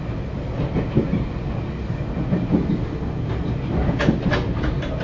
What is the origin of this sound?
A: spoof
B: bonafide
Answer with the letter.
B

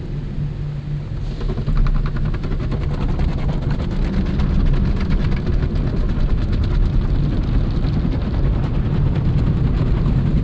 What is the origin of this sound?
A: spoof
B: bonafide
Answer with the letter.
B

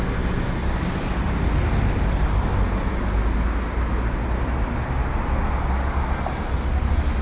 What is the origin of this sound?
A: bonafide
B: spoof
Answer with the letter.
A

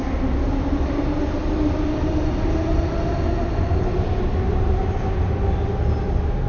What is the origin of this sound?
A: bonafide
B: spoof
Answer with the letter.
A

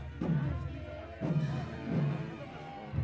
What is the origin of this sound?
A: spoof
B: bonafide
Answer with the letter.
B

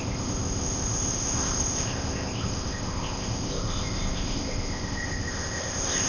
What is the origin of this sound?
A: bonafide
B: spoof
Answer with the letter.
B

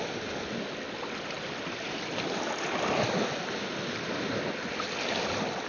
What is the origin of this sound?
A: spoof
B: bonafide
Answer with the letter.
B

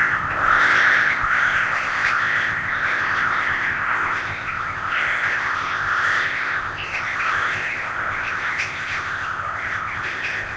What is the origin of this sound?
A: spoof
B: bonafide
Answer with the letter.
A